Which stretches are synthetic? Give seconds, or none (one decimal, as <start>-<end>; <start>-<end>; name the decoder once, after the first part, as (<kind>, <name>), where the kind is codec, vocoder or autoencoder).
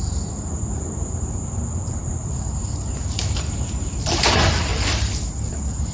0.0-4.7 (vocoder, BigVGAN v2)